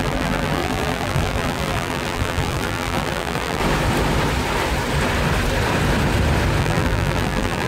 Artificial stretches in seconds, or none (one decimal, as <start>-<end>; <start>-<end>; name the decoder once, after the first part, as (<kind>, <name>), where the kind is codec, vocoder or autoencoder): 0.0-3.6 (vocoder, BigVGAN v2); 6.6-7.7